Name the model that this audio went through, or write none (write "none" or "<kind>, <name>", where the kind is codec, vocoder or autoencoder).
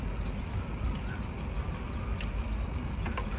none